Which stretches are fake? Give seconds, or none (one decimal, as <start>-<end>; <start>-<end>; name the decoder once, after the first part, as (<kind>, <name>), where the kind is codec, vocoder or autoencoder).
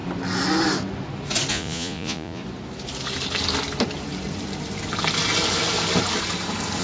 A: 1.5-2.4 (vocoder, Vocos)